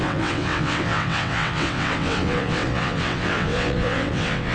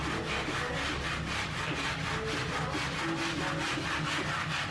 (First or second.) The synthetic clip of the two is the first